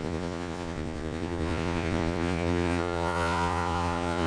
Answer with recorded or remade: remade